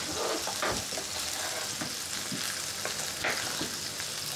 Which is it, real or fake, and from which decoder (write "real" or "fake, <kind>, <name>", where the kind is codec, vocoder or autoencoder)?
real